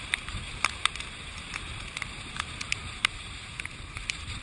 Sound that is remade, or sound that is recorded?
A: remade